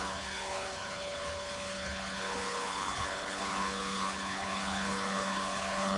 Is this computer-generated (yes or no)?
yes